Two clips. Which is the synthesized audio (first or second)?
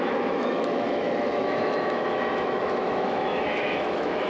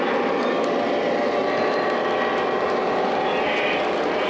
first